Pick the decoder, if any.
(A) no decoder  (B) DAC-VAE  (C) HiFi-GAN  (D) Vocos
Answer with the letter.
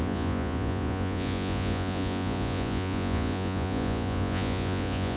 D